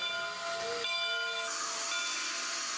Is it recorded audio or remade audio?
recorded